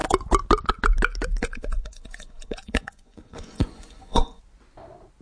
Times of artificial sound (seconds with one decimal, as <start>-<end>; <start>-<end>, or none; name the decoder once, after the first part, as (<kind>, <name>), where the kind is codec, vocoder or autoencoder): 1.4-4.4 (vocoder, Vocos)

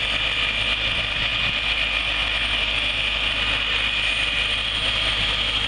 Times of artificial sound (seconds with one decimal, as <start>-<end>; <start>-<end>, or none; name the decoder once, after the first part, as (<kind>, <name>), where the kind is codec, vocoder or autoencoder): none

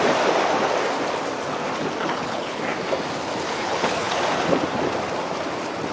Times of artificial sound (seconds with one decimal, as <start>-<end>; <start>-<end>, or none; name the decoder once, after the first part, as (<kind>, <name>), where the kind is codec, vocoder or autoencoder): 2.0-2.6 (codec, HILCodec); 3.5-4.1